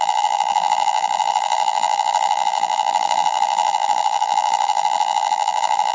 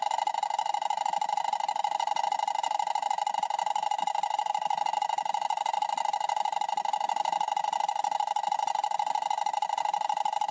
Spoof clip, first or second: first